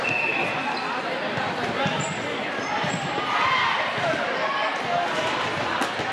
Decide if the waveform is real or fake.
real